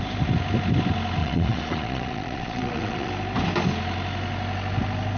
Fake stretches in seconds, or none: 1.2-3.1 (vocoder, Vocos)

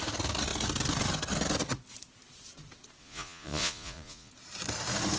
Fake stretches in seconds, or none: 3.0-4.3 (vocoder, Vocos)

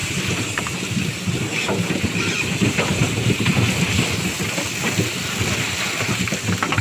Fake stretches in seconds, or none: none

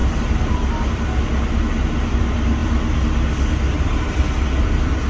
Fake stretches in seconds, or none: none